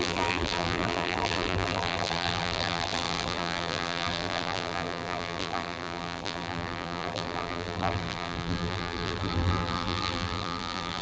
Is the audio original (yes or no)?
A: no